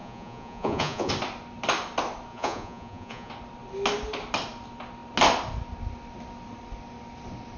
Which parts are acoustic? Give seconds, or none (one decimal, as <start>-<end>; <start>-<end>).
1.1-2.3; 3.3-7.6